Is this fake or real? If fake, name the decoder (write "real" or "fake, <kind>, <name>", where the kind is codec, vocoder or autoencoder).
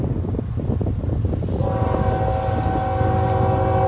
real